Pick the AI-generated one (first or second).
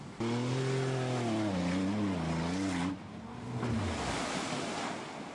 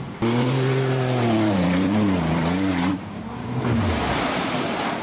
second